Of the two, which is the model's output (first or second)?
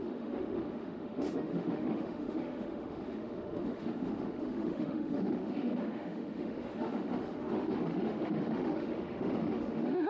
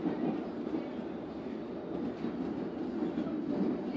first